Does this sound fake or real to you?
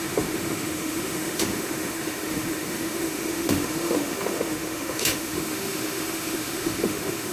fake